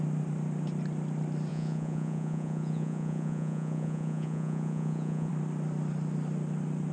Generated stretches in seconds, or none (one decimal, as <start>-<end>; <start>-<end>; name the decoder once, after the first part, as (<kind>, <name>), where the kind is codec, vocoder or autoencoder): 1.5-5.3 (vocoder, Vocos)